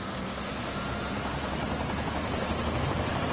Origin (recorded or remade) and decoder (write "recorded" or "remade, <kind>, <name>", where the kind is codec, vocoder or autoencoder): recorded